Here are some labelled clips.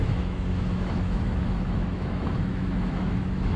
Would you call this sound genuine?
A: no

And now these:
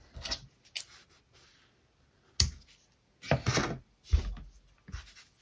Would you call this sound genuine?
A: yes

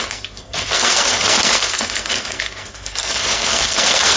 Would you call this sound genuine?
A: no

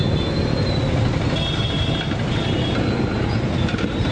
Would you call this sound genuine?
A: yes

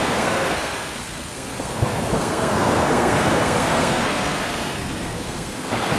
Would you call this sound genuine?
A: no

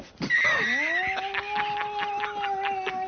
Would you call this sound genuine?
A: yes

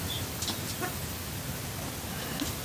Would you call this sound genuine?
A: yes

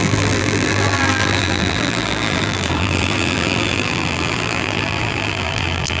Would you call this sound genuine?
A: no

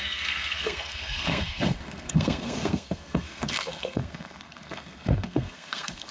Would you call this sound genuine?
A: no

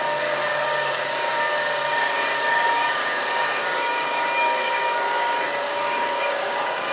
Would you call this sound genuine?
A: no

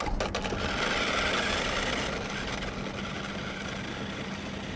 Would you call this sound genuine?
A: yes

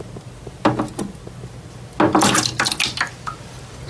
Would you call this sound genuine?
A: yes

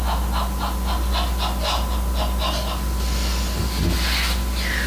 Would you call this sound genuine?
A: yes